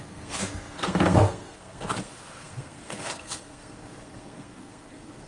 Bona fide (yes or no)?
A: no